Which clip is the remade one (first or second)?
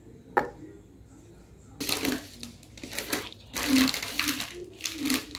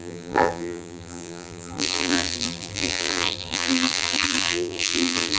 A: second